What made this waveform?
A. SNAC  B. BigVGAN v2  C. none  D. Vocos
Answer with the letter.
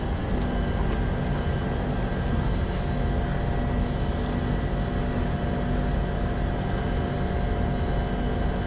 C